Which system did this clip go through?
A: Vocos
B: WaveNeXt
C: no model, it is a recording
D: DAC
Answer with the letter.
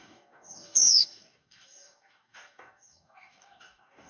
D